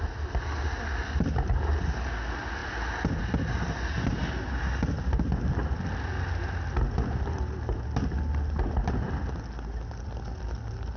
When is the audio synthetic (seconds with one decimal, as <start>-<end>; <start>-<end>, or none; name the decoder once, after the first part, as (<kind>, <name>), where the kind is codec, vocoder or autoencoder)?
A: none